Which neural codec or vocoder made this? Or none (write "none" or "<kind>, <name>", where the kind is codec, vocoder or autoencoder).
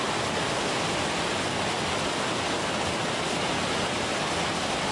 none